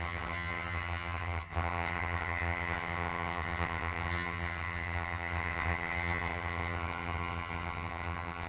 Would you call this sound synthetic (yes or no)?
yes